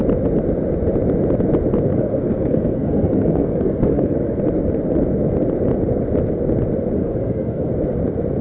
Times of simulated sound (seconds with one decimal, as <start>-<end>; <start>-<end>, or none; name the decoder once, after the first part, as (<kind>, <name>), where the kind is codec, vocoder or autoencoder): 1.9-4.4 (codec, SNAC); 7.0-7.7